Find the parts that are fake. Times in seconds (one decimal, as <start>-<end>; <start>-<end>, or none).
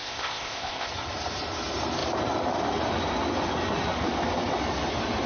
0.0-0.9